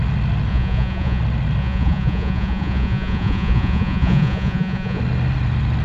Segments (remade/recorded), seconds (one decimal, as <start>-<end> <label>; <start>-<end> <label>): 0.0-0.5 recorded; 0.5-1.2 remade; 1.2-1.6 recorded; 1.6-5.0 remade; 5.0-5.8 recorded